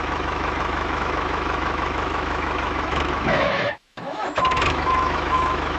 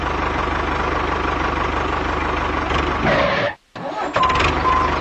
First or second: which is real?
second